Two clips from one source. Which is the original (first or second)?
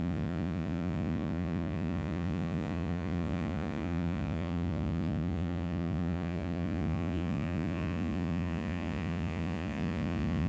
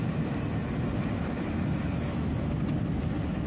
second